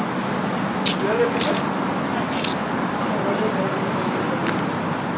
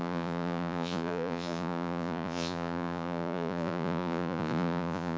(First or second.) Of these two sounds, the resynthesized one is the second